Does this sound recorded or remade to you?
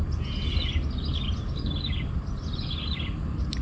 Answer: recorded